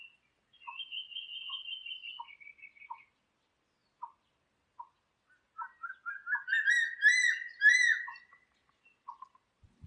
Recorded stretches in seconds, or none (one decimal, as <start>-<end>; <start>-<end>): 0.0-9.9